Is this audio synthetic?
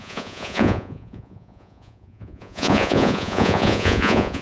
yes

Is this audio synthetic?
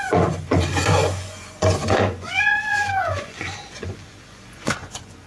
yes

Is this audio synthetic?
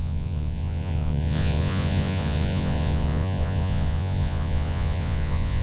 yes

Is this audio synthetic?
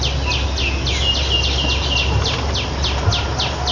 no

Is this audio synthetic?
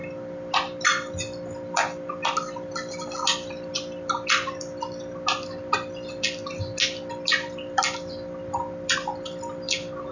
no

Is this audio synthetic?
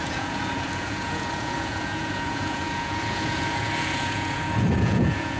yes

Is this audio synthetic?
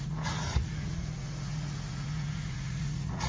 yes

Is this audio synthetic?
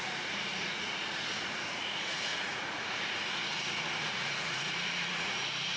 yes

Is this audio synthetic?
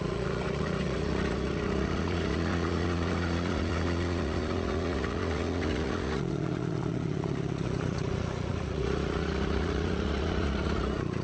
yes